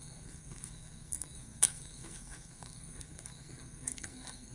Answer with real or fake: fake